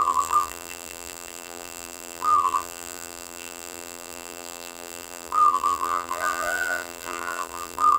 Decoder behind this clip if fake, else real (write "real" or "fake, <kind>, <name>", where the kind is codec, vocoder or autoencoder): fake, vocoder, BigVGAN v2